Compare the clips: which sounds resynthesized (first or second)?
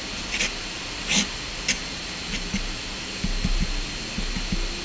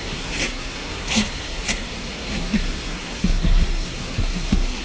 second